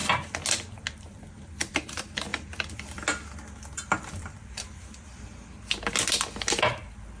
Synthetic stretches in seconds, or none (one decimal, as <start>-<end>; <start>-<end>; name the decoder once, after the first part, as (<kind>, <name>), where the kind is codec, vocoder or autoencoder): none